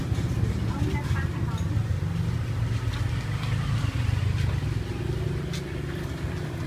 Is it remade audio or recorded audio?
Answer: recorded